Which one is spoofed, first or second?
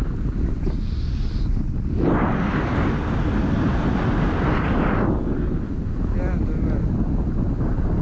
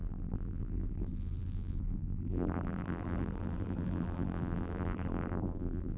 second